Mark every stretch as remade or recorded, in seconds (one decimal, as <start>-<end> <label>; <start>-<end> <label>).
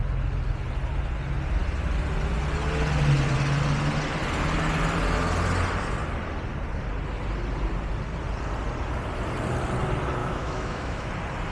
0.0-10.2 recorded; 10.2-11.1 remade; 11.1-11.5 recorded